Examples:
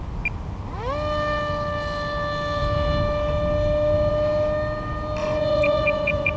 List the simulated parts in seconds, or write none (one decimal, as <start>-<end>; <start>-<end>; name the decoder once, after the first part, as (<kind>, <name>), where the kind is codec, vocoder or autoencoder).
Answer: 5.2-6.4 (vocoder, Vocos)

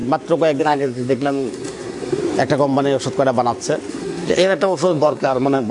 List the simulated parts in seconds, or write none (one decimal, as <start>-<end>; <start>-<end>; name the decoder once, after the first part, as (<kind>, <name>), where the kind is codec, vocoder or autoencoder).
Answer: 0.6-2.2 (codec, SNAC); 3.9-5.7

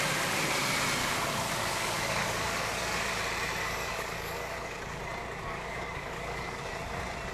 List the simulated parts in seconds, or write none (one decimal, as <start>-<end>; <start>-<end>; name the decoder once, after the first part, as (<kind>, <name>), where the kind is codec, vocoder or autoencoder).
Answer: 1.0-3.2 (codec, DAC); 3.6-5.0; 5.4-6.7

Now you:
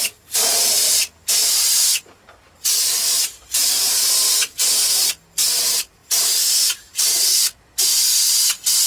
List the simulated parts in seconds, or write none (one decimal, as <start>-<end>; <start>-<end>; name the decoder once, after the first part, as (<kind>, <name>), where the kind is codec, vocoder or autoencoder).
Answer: 1.4-2.0 (vocoder, BigVGAN v2); 3.6-4.1

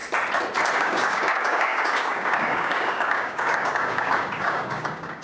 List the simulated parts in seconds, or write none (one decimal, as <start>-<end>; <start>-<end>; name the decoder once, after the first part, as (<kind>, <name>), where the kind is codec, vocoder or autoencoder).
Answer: 0.7-5.2 (codec, DAC)

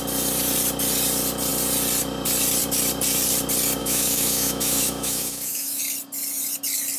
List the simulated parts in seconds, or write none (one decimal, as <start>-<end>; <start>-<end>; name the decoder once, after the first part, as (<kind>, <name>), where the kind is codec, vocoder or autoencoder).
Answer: 3.8-5.8 (autoencoder, DAC-VAE)

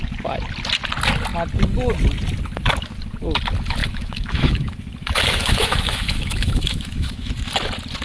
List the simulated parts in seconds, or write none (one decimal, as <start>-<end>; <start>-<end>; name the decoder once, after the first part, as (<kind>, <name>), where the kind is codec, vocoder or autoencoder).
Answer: 3.8-7.3 (autoencoder, DAC-VAE)

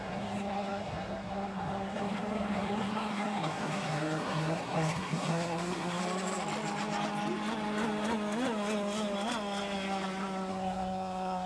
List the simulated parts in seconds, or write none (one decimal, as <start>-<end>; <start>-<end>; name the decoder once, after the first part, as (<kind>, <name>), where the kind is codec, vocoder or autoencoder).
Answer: 0.0-6.0 (codec, SNAC); 10.5-11.5